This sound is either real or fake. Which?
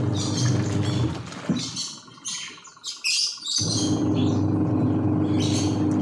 real